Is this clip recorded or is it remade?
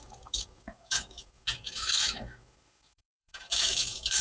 remade